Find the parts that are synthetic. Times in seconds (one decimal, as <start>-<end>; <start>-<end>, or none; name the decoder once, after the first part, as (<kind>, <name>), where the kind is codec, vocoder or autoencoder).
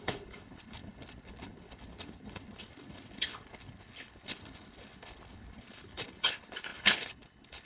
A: 0.0-7.7 (codec, HILCodec)